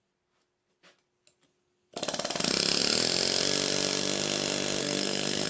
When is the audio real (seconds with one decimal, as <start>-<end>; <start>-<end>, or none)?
0.0-4.8